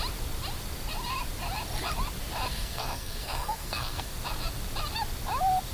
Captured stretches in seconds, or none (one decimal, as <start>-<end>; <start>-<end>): 0.0-2.5; 4.1-5.7